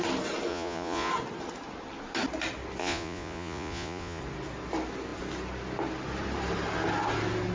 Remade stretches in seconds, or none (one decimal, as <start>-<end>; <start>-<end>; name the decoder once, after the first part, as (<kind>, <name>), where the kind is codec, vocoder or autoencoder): 0.5-1.1 (vocoder, Vocos); 2.8-4.2